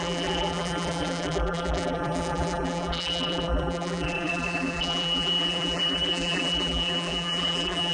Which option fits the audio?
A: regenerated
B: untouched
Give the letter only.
A